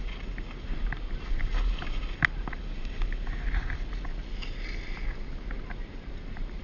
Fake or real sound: real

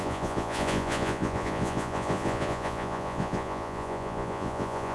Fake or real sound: fake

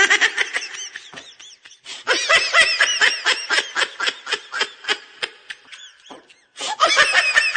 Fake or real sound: real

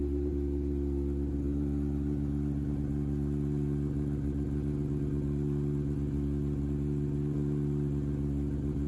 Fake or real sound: real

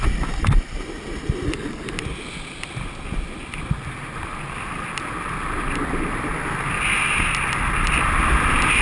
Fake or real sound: real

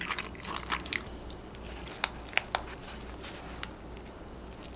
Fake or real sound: real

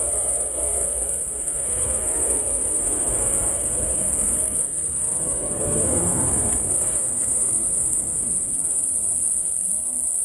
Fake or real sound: fake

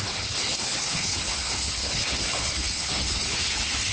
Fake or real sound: fake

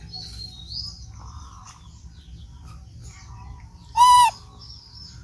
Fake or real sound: real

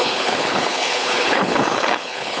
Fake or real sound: fake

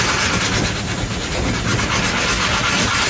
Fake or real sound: real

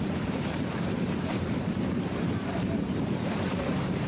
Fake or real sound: fake